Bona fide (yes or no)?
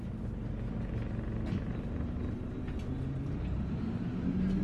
yes